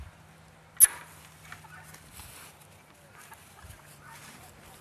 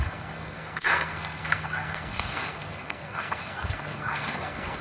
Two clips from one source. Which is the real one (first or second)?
first